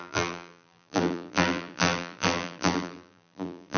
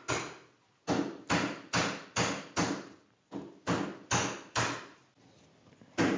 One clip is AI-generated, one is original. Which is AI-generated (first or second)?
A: first